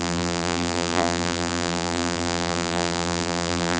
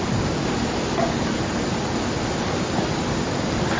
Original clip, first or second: second